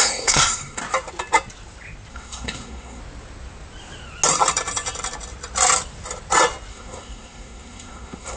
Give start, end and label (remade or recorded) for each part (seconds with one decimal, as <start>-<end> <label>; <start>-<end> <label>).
0.0-0.8 remade; 0.8-2.1 recorded; 2.1-3.0 remade; 3.0-6.7 recorded; 6.7-8.4 remade